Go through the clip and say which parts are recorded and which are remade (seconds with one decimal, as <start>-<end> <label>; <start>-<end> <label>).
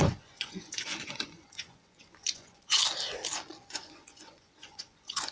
0.0-2.8 remade; 2.8-3.7 recorded; 3.7-5.3 remade